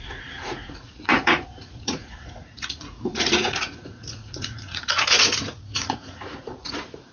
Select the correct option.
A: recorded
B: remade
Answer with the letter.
B